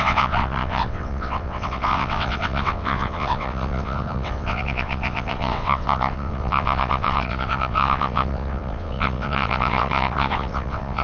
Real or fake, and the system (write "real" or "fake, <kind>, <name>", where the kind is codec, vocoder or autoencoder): fake, vocoder, WaveNeXt